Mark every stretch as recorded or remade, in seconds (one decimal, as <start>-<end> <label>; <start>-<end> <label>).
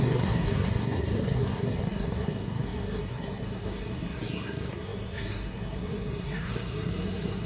0.0-7.5 remade